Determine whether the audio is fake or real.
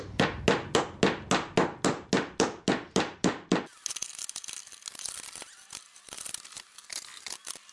real